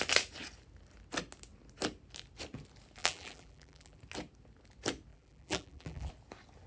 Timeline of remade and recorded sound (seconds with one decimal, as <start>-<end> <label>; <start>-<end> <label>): 0.0-3.0 recorded; 3.0-4.0 remade; 4.0-5.1 recorded; 5.1-6.1 remade; 6.1-6.7 recorded